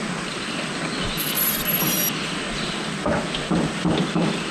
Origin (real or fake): real